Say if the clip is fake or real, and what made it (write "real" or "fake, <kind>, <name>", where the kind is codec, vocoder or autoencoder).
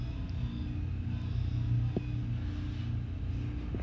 real